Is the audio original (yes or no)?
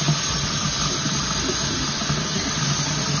yes